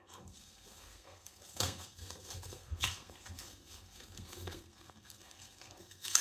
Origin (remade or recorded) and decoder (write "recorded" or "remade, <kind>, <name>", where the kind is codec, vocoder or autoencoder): remade, codec, SNAC